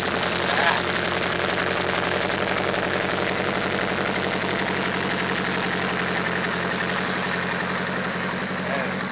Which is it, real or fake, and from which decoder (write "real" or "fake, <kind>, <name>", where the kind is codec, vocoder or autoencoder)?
real